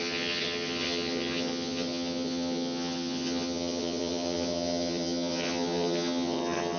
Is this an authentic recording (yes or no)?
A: no